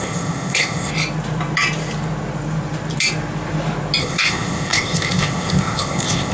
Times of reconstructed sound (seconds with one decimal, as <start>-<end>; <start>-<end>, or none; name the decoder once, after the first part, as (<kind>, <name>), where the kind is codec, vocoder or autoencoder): 0.0-0.9 (codec, ZipCodec); 4.0-6.3

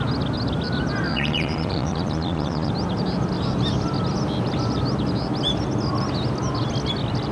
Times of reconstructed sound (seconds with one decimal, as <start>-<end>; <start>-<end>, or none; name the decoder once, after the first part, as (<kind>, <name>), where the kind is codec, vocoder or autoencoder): 1.1-2.7 (vocoder, Vocos)

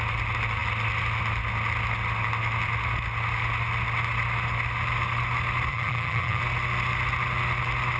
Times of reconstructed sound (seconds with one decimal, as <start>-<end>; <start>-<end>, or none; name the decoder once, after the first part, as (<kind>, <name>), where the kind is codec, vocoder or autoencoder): 5.7-6.4 (vocoder, HiFi-GAN)

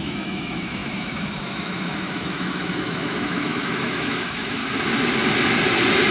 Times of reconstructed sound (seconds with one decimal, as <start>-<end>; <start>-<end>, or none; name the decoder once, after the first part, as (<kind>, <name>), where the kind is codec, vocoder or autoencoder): 0.0-4.6 (autoencoder, DAC-VAE)

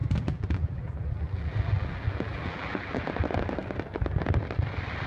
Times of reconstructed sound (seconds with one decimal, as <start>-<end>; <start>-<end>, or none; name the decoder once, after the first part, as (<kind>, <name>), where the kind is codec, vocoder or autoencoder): 0.0-3.1 (vocoder, BigVGAN v2)

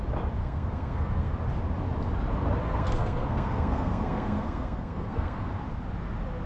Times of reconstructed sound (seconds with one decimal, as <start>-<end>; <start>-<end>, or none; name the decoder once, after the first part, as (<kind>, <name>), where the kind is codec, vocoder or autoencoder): 0.4-1.3 (codec, SNAC); 2.6-5.5